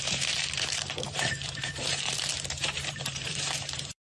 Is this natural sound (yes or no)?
no